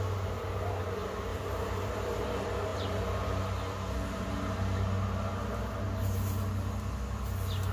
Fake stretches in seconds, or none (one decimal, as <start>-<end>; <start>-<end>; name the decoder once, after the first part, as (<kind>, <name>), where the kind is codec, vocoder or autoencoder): 1.3-2.2 (vocoder, BigVGAN v2)